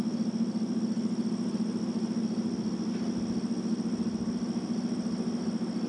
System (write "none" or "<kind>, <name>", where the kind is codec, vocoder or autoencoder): none